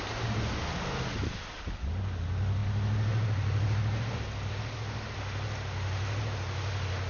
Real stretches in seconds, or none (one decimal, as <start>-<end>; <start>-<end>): 0.0-7.1